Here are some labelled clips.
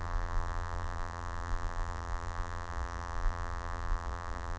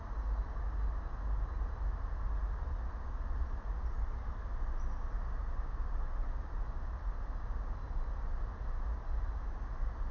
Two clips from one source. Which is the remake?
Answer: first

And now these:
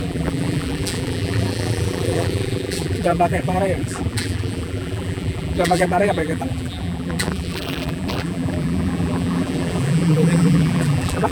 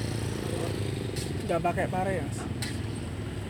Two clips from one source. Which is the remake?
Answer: first